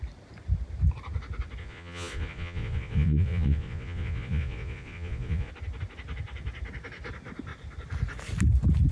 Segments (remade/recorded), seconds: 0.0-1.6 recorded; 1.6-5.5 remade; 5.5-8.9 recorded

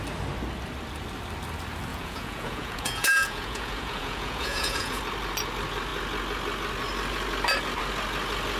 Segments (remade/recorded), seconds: 0.0-1.9 recorded; 1.9-5.0 remade; 5.0-8.6 recorded

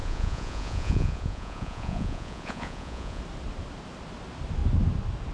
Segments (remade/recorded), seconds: 0.0-3.2 remade; 3.2-5.3 recorded

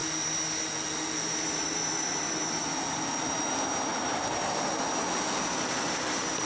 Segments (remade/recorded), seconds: 0.0-6.4 recorded

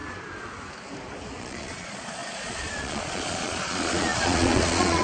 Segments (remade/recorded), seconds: 0.0-1.4 recorded; 1.4-5.0 remade